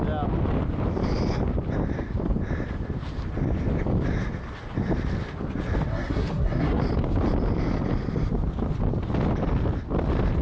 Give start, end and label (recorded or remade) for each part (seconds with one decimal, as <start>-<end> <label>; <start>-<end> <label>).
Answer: 0.0-5.9 recorded; 5.9-6.8 remade; 6.8-10.4 recorded